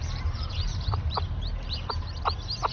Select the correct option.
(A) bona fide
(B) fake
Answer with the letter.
B